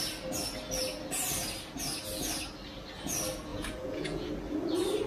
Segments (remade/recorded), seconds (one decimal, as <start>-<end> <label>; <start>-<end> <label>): 0.0-3.5 recorded; 3.5-4.3 remade; 4.3-5.1 recorded